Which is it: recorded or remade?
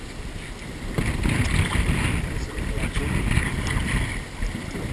recorded